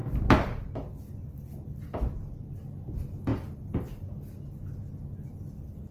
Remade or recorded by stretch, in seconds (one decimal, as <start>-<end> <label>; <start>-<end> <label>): 0.0-5.9 recorded